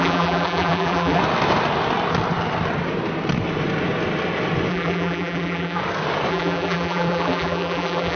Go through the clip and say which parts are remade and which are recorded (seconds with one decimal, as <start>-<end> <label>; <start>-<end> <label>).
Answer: 0.0-1.2 remade; 1.2-4.7 recorded; 4.7-5.8 remade; 5.8-6.3 recorded; 6.3-8.2 remade